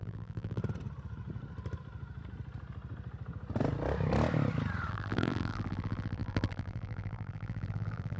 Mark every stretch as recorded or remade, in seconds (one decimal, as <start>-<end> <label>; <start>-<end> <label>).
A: 0.0-0.6 remade; 0.6-4.9 recorded; 4.9-8.2 remade